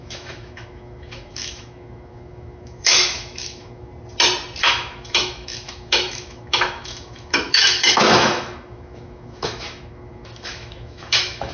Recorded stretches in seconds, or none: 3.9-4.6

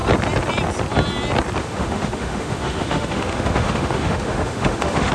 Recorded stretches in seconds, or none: 0.0-1.6

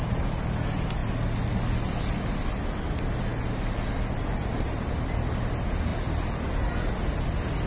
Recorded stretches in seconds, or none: 0.0-7.7

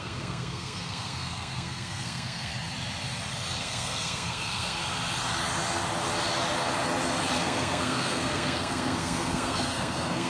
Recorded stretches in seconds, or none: 2.5-3.6; 4.8-7.4

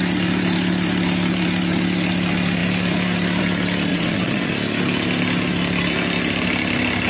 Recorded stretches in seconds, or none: 0.0-3.9; 4.5-7.1

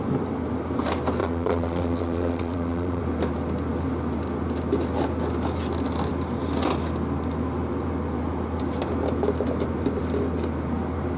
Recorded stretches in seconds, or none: 0.0-1.2; 3.0-11.2

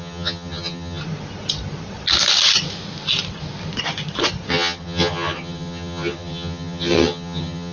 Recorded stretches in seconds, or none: 1.0-4.5